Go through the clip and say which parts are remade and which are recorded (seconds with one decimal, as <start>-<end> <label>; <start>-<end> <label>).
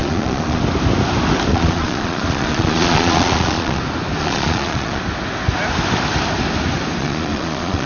0.0-0.6 remade; 0.6-1.5 recorded; 1.5-3.8 remade; 3.8-4.2 recorded; 4.2-5.0 remade; 5.0-7.0 recorded; 7.0-7.9 remade